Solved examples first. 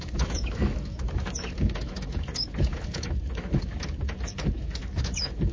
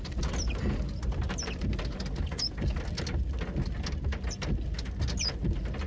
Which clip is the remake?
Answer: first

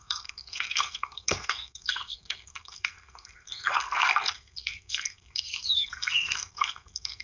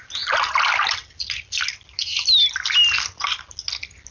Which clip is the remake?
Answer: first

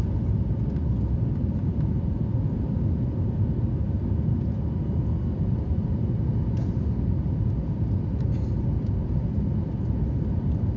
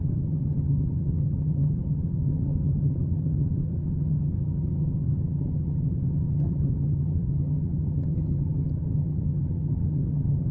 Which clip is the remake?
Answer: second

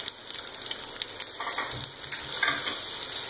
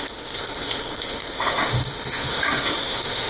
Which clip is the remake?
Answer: second